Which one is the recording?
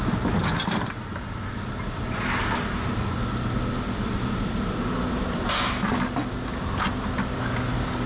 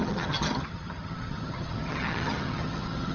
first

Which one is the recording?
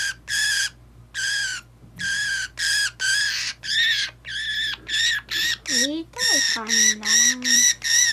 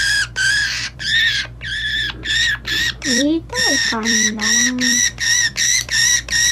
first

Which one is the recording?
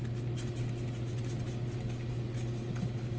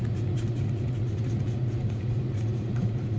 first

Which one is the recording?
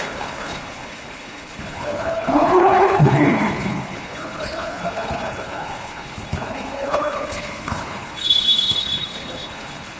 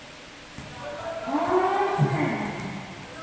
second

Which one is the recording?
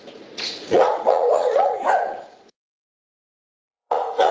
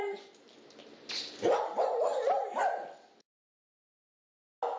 second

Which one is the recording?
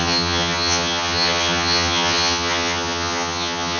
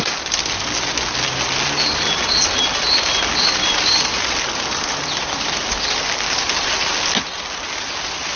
second